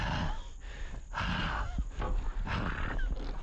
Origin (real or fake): real